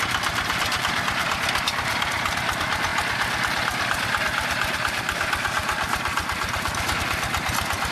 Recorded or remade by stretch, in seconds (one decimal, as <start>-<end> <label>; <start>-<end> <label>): 0.0-7.9 recorded